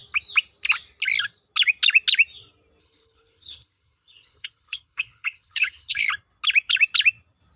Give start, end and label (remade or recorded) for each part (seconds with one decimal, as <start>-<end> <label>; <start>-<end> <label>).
0.0-2.8 recorded; 2.8-6.1 remade; 6.1-7.6 recorded